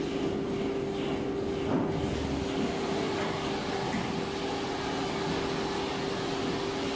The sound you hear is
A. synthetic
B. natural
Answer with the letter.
B